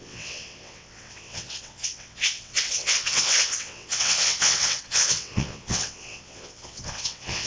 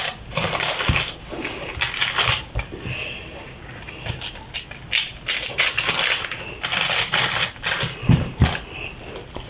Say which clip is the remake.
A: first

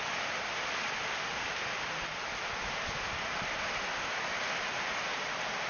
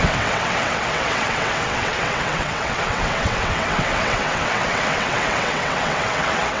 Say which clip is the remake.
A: second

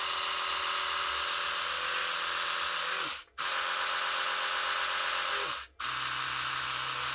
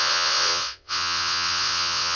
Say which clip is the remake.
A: second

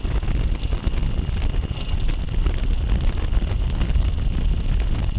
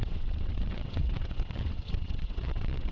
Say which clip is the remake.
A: second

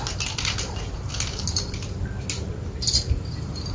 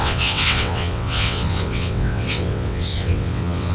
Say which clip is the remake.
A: second